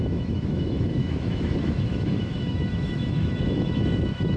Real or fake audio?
fake